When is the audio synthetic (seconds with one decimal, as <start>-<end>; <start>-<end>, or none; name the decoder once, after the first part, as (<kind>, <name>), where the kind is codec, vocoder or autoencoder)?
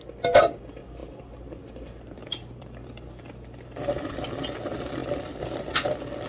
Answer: 2.2-4.4 (vocoder, BigVGAN v2); 5.0-5.6